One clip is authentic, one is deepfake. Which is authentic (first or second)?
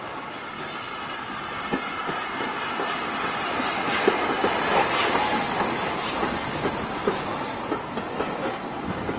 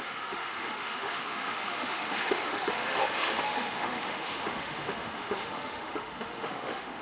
first